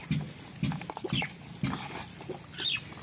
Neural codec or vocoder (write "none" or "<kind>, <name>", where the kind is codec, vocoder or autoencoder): none